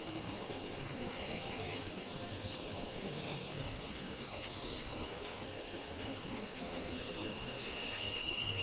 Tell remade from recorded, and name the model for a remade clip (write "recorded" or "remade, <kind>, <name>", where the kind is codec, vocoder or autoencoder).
remade, codec, SNAC